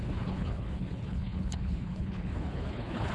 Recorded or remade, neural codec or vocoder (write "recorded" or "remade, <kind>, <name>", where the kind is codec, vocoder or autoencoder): remade, codec, HILCodec